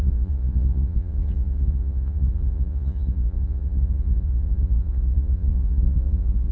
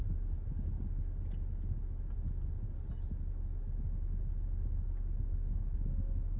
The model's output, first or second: first